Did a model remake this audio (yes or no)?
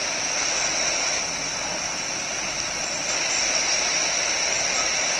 no